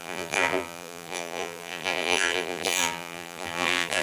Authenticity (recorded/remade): remade